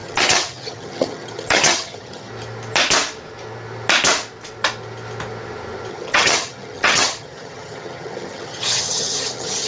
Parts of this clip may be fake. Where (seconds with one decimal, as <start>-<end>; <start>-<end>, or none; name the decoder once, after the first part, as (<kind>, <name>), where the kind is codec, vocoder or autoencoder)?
0.0-2.3 (vocoder, HiFi-GAN); 5.9-9.7